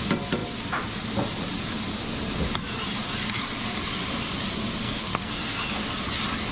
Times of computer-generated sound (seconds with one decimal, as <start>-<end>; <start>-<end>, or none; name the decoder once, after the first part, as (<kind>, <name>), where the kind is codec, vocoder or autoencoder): 4.8-5.8 (codec, SNAC)